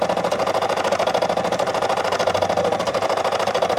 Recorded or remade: recorded